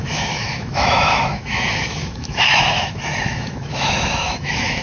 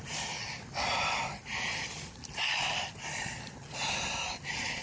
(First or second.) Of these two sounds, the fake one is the first